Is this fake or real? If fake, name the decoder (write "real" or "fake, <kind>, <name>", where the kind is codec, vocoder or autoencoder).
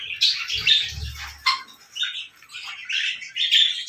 real